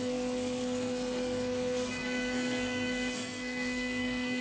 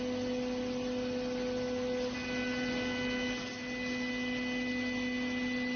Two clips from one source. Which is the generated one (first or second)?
first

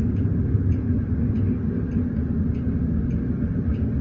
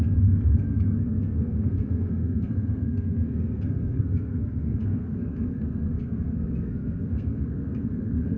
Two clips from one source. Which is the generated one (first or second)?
second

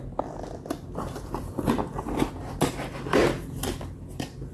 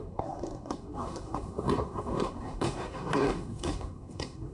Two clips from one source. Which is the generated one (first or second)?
second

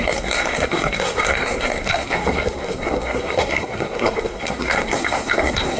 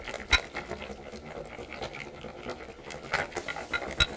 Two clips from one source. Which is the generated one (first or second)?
first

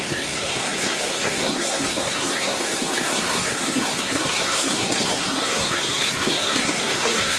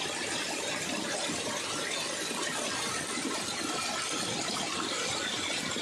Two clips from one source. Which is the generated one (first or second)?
first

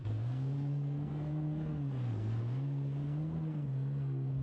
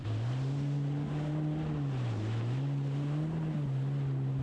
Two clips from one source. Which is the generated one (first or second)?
first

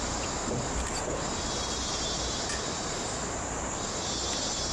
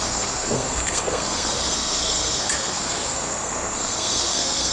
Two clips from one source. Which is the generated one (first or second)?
second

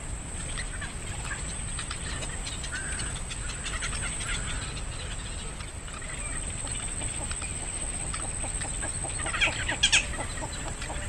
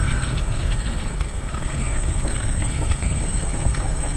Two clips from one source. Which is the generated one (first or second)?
second